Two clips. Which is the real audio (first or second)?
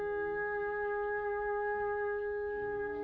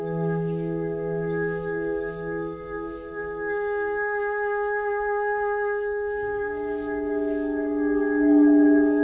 first